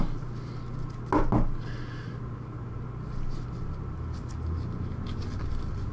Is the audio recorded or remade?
recorded